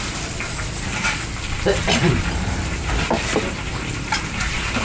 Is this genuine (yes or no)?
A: no